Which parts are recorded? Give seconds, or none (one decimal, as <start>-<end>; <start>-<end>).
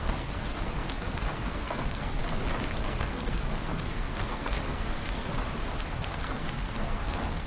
2.2-2.8; 5.3-5.8